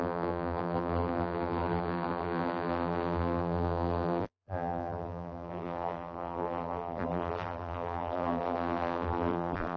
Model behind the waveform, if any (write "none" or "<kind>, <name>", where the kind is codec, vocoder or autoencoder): vocoder, BigVGAN v2